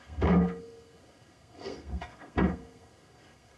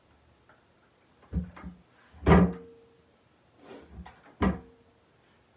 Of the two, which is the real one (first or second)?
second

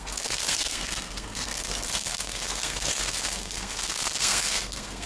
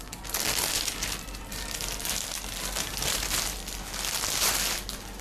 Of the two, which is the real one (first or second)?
second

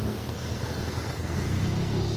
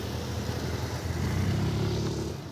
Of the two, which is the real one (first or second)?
second